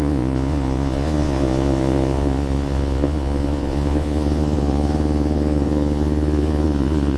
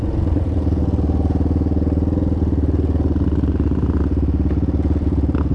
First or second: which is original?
second